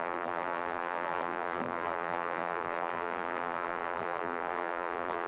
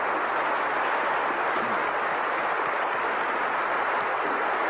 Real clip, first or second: second